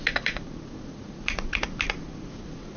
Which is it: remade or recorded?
remade